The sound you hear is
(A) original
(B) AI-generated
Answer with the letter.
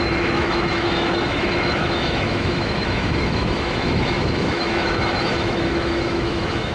B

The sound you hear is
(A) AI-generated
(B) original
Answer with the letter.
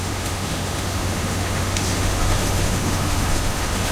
A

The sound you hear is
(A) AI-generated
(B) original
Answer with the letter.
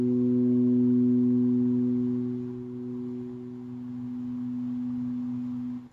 B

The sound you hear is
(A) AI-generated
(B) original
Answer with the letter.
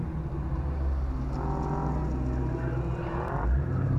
B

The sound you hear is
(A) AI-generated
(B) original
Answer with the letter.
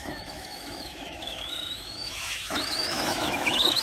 A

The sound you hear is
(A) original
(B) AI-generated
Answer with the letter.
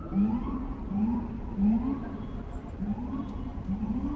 A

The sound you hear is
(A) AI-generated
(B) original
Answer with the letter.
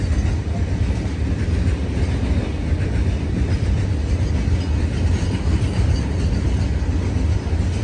B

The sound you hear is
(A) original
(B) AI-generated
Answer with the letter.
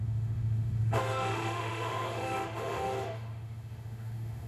B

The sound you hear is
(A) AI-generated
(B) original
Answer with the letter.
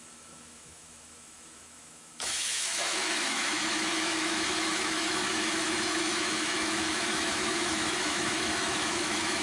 A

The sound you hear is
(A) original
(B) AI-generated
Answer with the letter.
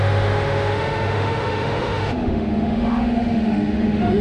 B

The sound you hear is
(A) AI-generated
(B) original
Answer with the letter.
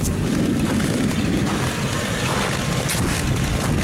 B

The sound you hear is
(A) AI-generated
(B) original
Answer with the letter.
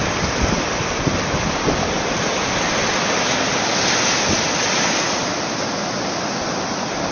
B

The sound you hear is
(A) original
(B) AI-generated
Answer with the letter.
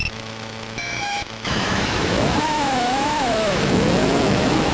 B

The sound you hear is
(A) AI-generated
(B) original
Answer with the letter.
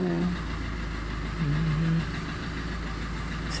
B